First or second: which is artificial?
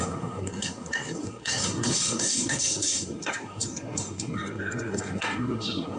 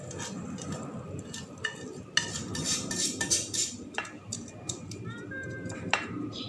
first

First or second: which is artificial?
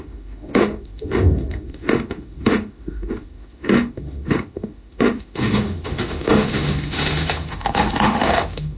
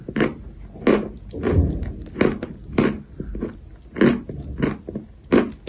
first